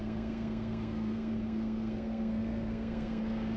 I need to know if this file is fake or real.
fake